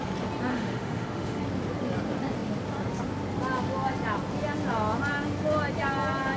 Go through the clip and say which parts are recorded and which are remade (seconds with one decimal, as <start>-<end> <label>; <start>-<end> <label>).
0.0-0.5 recorded; 0.5-1.4 remade; 1.4-6.4 recorded